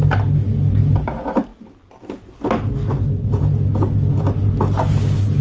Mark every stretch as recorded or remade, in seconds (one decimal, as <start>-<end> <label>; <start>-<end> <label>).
0.0-5.4 recorded